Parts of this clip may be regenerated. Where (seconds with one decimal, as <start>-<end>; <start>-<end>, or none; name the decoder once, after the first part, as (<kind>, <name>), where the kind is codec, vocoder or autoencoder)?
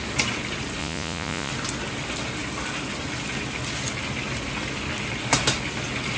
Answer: 0.8-1.5 (vocoder, Vocos)